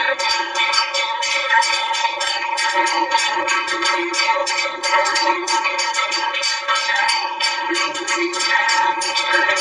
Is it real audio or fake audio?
fake